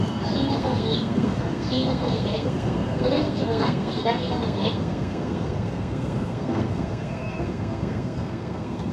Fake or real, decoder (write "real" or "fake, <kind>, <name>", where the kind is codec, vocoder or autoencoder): fake, codec, SNAC